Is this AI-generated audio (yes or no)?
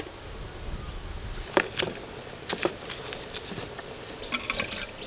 no